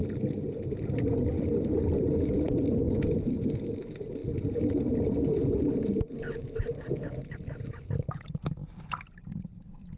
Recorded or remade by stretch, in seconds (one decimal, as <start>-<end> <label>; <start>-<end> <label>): 0.0-0.8 recorded; 0.8-4.2 remade; 4.2-7.9 recorded; 7.9-8.6 remade; 8.6-9.2 recorded; 9.2-10.0 remade